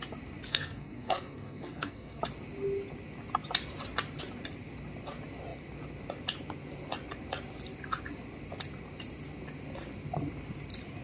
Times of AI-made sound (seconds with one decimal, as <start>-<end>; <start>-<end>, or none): 0.5-2.2